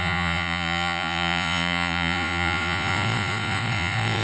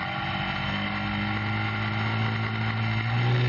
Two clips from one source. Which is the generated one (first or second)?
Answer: first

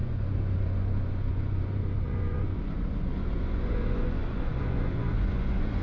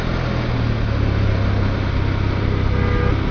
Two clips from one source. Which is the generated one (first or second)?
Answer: first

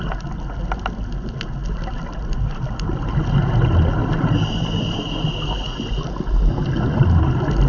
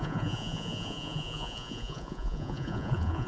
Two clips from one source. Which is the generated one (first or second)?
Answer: second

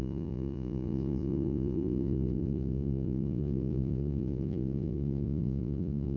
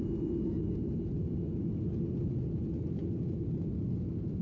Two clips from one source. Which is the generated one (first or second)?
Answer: first